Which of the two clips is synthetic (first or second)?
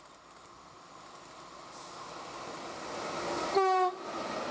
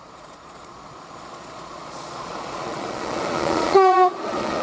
second